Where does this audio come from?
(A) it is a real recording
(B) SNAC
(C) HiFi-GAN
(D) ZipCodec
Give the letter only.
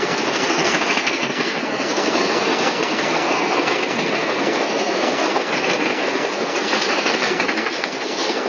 B